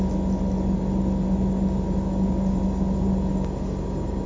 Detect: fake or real real